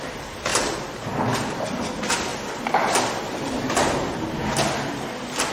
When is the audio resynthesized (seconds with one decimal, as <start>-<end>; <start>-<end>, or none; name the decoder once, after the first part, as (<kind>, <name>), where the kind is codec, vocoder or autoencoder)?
0.5-1.6 (vocoder, BigVGAN v2); 2.3-3.1